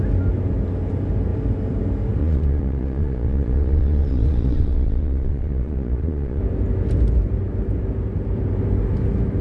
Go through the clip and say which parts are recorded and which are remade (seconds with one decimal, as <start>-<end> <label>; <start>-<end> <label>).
0.0-2.2 recorded; 2.2-6.4 remade; 6.4-9.4 recorded